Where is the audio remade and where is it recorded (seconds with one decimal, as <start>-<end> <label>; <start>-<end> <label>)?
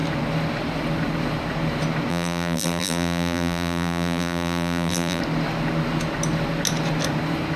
0.0-2.1 recorded; 2.1-5.2 remade; 5.2-7.6 recorded